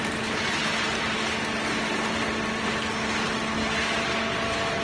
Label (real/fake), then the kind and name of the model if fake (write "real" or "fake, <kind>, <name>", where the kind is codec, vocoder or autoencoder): real